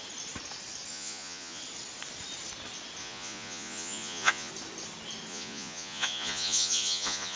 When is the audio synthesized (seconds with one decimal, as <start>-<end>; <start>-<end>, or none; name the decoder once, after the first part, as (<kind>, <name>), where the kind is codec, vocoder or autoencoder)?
0.9-1.6 (vocoder, Vocos); 3.0-4.5; 5.3-7.4